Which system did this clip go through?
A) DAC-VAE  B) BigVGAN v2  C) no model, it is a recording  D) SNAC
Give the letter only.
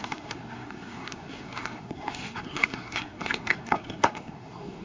D